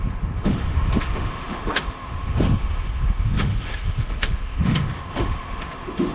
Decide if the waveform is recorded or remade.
remade